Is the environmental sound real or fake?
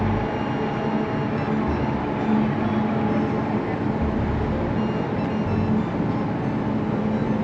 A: real